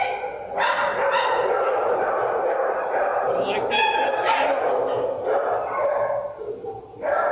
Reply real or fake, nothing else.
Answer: real